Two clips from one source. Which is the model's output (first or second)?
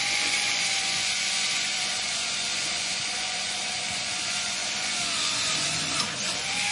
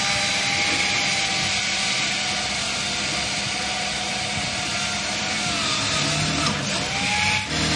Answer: first